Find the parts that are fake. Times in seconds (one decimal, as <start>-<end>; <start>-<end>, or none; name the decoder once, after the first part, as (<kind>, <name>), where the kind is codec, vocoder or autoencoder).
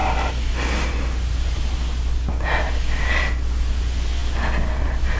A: none